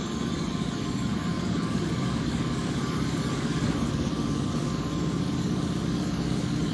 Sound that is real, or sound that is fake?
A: fake